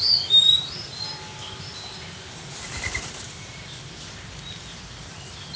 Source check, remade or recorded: remade